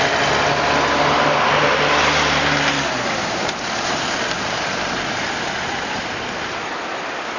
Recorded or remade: recorded